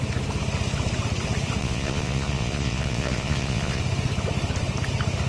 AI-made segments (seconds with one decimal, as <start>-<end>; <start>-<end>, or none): 1.6-3.8